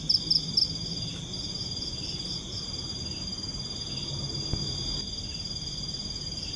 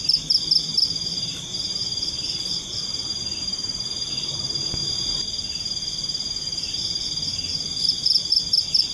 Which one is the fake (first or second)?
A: second